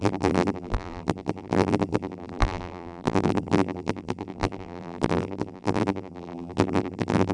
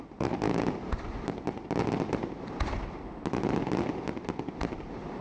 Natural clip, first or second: second